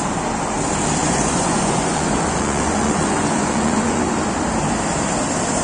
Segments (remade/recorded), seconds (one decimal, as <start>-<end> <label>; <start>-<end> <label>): 0.0-1.0 recorded; 1.0-4.0 remade; 4.0-5.6 recorded